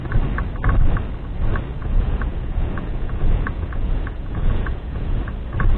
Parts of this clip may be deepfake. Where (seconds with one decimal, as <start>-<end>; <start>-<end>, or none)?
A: 1.8-5.3